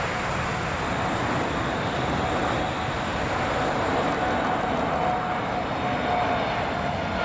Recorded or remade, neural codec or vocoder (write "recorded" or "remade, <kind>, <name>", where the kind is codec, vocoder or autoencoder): recorded